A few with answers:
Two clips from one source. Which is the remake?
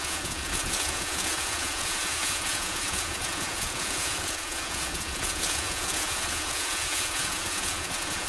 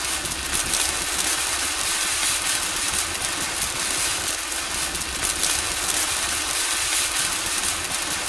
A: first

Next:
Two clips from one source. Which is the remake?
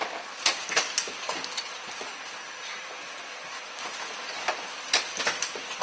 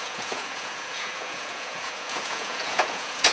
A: second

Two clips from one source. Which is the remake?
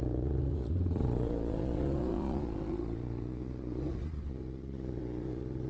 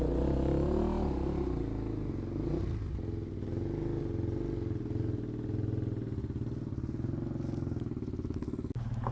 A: first